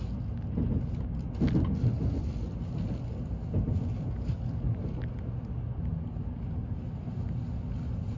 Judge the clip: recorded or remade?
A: recorded